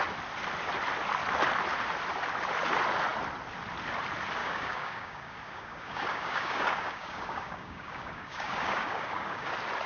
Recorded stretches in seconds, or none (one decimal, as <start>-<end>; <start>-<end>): 0.0-4.4; 9.5-9.9